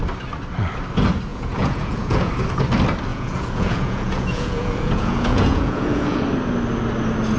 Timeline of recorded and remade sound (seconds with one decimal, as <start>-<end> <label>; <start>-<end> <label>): 0.0-1.3 recorded; 1.3-2.3 remade; 2.3-3.1 recorded; 3.1-6.2 remade; 6.2-7.4 recorded